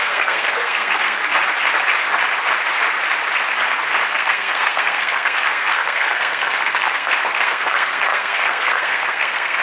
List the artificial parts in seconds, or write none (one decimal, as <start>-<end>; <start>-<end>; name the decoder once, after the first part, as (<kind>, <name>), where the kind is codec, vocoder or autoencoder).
0.0-1.2 (codec, SNAC); 4.1-9.6